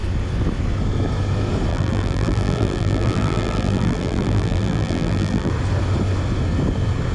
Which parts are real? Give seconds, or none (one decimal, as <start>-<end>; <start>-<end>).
0.0-1.7; 5.5-7.1